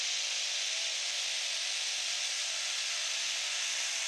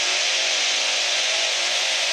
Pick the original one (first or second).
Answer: first